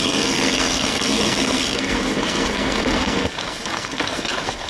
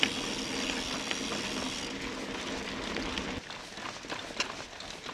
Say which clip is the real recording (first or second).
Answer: second